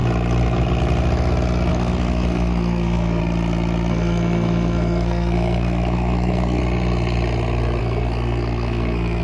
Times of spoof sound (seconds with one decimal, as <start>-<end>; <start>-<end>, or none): 1.7-3.2; 3.9-6.6; 7.8-9.2